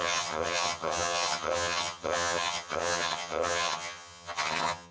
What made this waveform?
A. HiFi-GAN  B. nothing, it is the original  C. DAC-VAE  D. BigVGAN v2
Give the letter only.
A